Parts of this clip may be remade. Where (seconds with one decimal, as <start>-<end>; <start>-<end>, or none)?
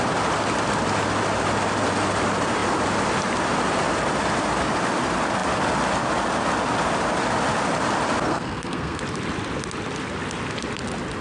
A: 8.3-9.0